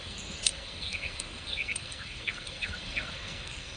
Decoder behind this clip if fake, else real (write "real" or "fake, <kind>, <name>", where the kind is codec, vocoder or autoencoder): fake, codec, SNAC